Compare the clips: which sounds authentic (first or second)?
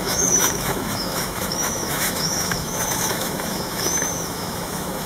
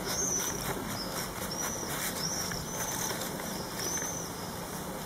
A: second